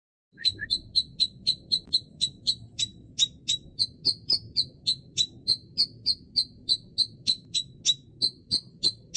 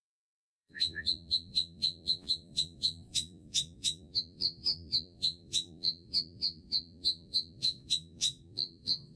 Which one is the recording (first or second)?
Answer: first